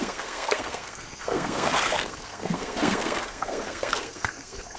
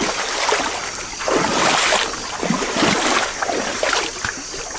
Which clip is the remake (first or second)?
first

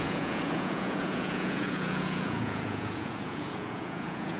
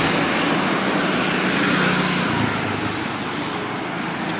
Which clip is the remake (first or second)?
first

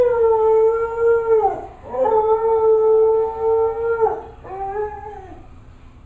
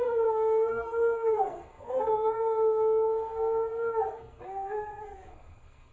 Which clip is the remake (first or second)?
second